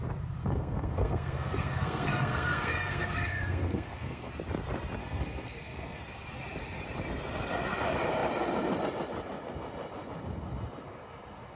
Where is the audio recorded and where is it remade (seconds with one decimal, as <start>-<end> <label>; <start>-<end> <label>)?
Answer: 0.0-0.4 recorded; 0.4-4.3 remade; 4.3-5.0 recorded; 5.0-6.0 remade; 6.0-11.6 recorded